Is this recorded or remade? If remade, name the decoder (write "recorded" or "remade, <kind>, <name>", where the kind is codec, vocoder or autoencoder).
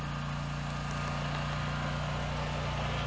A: recorded